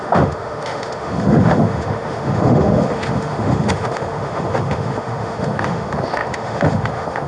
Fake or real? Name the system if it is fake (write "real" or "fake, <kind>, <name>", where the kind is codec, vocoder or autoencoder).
fake, autoencoder, DAC-VAE